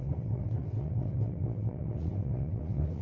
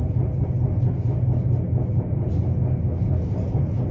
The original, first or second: second